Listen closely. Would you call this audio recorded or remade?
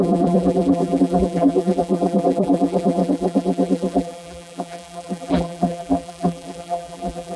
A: remade